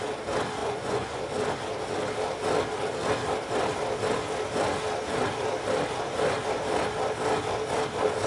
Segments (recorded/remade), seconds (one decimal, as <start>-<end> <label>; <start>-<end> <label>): 0.0-0.6 recorded; 0.6-1.2 remade; 1.2-8.3 recorded